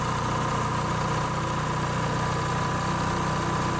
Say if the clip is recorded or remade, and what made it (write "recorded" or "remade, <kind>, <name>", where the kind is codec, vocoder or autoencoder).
recorded